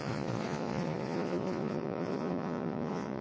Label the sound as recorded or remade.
remade